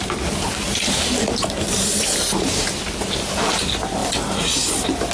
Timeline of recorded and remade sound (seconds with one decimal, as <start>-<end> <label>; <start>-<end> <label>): 0.0-5.1 recorded